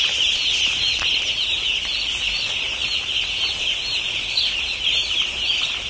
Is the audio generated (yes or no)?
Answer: no